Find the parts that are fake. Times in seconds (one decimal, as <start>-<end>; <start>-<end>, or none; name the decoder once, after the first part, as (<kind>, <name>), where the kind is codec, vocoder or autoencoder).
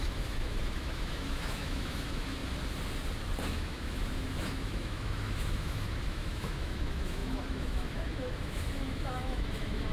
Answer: 0.0-2.4 (autoencoder, DAC-VAE); 3.5-9.9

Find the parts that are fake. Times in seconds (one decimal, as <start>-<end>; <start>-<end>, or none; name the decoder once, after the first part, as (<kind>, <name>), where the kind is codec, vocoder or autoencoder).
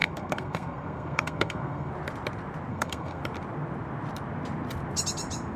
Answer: 0.0-1.9 (codec, SNAC); 2.7-3.2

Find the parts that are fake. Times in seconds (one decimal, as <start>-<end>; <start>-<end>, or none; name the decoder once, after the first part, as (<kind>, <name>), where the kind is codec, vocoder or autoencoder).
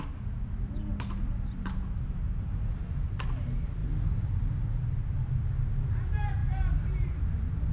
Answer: 3.8-5.3 (vocoder, BigVGAN v2); 6.4-7.1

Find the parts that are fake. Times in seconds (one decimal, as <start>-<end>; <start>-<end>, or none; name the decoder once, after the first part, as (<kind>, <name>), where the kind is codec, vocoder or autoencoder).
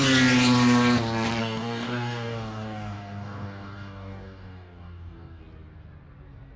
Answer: 1.4-5.4 (codec, DAC)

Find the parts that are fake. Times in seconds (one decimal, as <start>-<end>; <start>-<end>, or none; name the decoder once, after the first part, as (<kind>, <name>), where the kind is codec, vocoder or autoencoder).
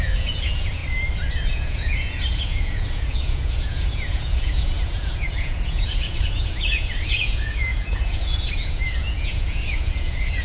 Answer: 0.0-0.8 (vocoder, Vocos); 1.5-10.4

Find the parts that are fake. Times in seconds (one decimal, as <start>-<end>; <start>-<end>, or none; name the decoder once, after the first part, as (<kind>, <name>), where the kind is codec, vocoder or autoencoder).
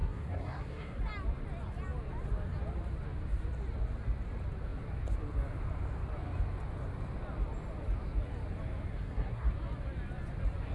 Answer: 0.0-1.0 (codec, SNAC); 8.9-9.5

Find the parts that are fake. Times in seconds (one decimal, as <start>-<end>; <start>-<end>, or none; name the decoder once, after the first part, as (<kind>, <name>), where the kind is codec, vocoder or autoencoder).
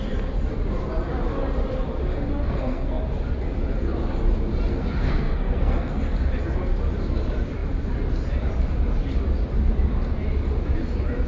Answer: 2.4-3.0 (codec, SNAC); 4.7-6.0